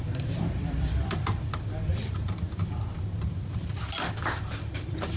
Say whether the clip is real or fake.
fake